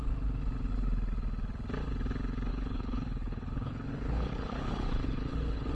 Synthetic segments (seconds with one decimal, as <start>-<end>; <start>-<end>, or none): 2.5-5.7